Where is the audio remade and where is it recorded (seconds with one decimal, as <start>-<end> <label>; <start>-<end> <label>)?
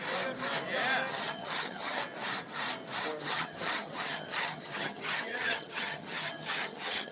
0.0-1.1 recorded; 1.1-2.0 remade; 2.0-3.2 recorded; 3.2-7.1 remade